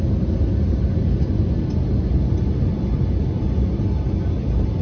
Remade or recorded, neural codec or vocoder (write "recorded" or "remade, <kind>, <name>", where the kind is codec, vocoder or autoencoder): recorded